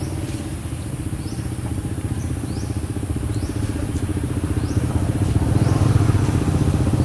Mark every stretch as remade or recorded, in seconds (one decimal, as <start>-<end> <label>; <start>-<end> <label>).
0.0-1.8 recorded; 1.8-2.3 remade; 2.3-4.1 recorded; 4.1-4.9 remade; 4.9-7.0 recorded